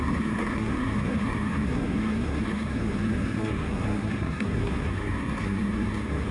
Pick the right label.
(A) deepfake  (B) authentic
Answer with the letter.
A